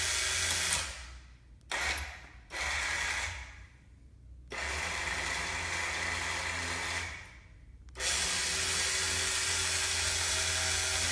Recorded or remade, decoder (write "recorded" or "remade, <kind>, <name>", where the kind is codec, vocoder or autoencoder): recorded